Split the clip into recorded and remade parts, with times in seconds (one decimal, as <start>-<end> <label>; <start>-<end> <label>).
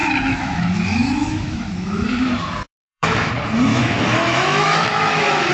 0.0-3.3 remade; 3.3-3.7 recorded; 3.7-5.5 remade